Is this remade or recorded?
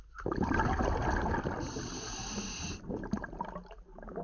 recorded